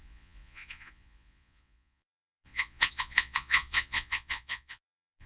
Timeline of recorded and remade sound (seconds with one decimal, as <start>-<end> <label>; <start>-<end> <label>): 0.0-5.3 remade